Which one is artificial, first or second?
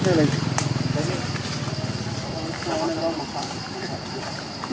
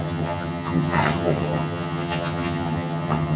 second